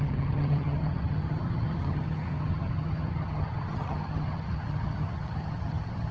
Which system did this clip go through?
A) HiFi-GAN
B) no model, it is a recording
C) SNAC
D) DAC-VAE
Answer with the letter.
A